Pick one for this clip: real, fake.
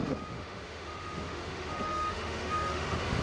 fake